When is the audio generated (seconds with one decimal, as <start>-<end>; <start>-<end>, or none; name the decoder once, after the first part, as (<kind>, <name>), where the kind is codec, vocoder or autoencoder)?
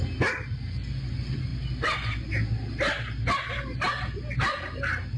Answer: none